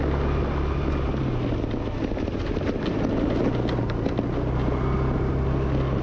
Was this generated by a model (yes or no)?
no